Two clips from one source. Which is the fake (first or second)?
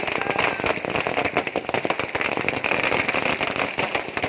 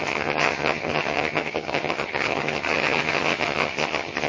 second